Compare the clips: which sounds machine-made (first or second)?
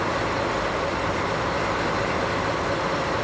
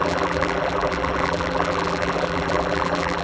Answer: second